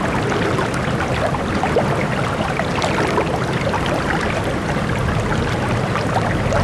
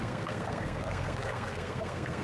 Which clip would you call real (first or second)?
first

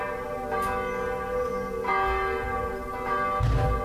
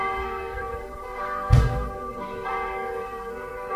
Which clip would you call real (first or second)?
first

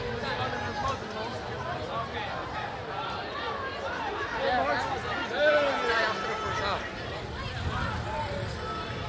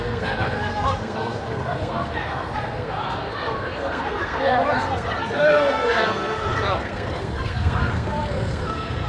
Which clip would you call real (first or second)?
first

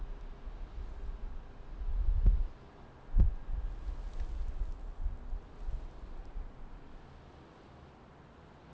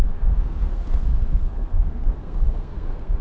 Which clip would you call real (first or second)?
first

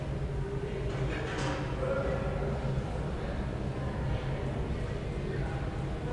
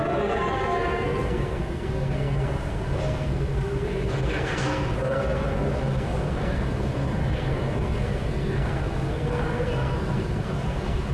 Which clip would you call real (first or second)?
first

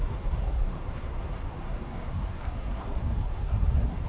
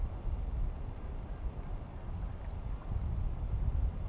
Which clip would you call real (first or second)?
second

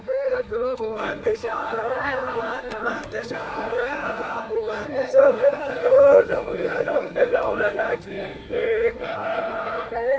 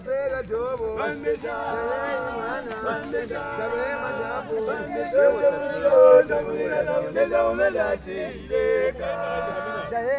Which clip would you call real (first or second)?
second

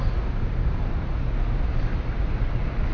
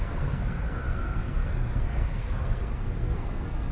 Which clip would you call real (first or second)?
first